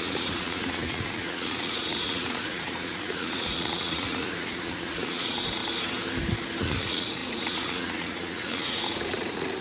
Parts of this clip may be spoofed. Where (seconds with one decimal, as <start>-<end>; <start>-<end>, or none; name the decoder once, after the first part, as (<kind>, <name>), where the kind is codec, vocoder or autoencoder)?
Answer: 0.0-5.6 (vocoder, Vocos); 6.6-9.6